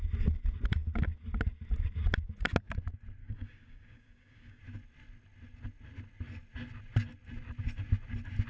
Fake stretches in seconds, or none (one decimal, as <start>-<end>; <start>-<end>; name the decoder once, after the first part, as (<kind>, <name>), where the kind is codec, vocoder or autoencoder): 3.2-4.6 (codec, DAC)